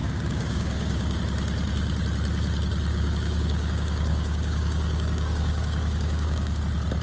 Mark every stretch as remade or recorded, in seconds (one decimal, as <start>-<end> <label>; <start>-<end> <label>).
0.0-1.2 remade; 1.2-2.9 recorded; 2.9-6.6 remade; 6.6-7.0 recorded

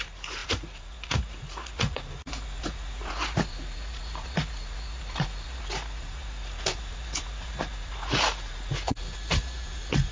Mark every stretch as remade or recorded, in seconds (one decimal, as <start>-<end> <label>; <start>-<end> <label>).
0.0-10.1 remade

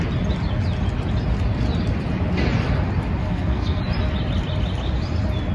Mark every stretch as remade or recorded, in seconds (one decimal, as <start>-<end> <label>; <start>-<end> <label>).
0.0-3.2 recorded; 3.2-3.8 remade; 3.8-5.5 recorded